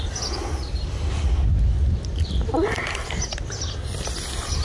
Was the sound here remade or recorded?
recorded